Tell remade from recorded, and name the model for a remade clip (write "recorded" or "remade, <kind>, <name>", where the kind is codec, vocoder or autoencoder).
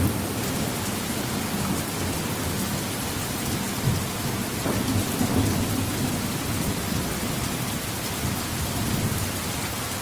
recorded